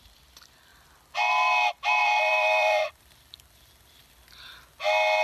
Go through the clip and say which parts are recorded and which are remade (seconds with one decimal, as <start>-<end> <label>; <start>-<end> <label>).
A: 0.0-2.0 recorded; 2.0-4.1 remade; 4.1-5.2 recorded